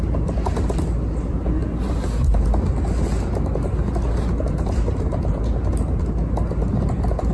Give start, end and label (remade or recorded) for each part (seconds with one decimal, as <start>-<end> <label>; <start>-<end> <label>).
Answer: 0.0-7.3 recorded